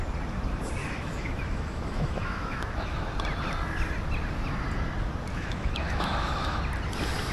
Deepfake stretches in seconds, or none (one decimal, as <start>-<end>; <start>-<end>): 0.8-3.0; 5.3-6.6

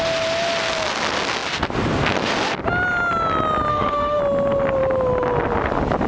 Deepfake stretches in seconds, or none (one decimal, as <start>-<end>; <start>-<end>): 3.7-4.2